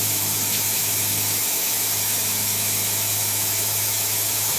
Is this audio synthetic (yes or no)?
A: yes